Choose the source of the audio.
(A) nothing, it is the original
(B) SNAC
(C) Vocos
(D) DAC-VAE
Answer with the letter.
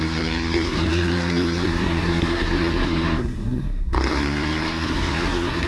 B